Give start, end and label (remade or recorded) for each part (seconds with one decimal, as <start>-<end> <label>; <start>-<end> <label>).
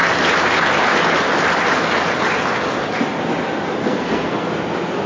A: 0.0-3.8 recorded; 3.8-4.5 remade; 4.5-5.1 recorded